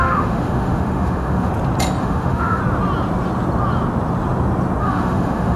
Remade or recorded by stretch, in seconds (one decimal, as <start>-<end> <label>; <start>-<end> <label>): 0.0-1.5 remade; 1.5-2.0 recorded; 2.0-2.6 remade; 2.6-4.8 recorded; 4.8-5.6 remade